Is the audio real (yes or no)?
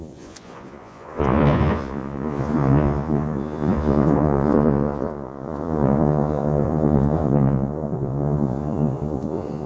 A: no